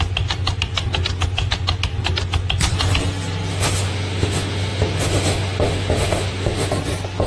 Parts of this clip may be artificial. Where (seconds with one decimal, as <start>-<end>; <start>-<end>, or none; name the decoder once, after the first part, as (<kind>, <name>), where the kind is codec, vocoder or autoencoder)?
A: 3.5-6.7 (autoencoder, DAC-VAE)